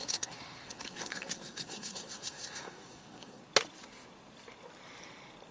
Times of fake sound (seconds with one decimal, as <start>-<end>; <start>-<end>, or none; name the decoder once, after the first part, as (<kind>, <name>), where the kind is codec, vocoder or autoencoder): 0.0-3.4 (codec, SNAC)

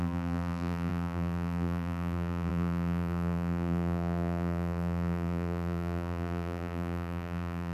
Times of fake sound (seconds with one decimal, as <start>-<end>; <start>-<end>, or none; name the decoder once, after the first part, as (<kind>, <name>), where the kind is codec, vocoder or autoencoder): 0.0-7.7 (vocoder, BigVGAN v2)

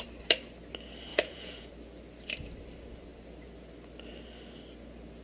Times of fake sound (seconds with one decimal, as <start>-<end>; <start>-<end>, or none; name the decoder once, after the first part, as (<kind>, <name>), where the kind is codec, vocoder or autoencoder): 1.1-1.7 (vocoder, Vocos)

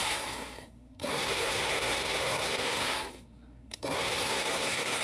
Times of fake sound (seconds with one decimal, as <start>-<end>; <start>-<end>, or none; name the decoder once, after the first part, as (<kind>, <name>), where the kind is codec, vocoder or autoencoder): 0.0-5.0 (codec, SNAC)

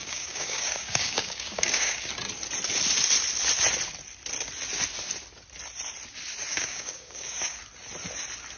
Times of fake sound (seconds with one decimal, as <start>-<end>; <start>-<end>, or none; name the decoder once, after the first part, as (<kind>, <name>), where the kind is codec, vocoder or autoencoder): 0.0-2.1 (codec, DAC); 6.5-7.6

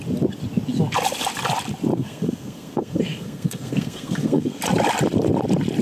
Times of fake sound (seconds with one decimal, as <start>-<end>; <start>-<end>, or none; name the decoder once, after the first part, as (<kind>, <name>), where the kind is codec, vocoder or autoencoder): 1.9-4.6 (codec, SNAC)